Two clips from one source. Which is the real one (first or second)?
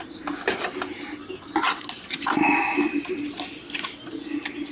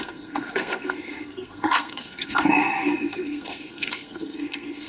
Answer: first